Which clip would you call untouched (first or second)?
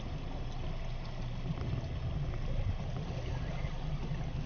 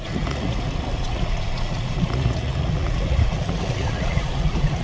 first